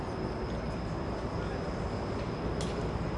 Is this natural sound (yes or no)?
yes